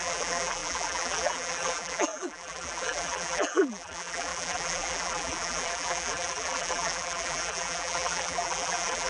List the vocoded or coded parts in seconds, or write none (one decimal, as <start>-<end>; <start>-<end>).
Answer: 0.0-9.1